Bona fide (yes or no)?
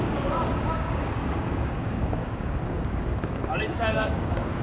no